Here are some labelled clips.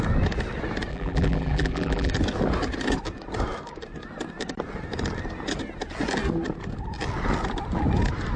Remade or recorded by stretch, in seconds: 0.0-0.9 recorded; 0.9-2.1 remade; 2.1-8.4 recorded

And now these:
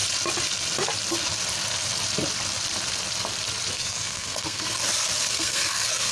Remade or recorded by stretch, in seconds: 0.0-3.7 recorded; 3.7-4.8 remade; 4.8-5.3 recorded; 5.3-6.1 remade

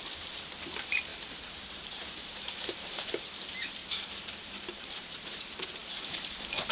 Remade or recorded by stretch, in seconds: 0.0-6.7 remade

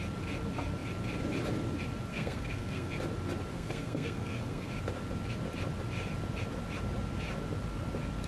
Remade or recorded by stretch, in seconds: 0.0-2.1 recorded; 2.1-2.9 remade; 2.9-3.5 recorded; 3.5-4.7 remade; 4.7-8.3 recorded

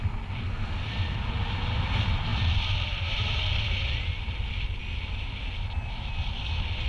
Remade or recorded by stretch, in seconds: 0.0-6.9 recorded